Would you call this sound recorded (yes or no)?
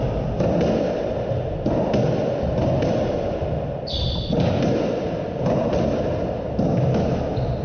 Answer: yes